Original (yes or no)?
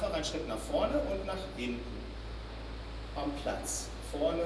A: yes